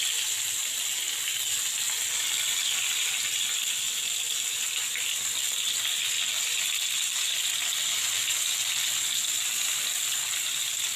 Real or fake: real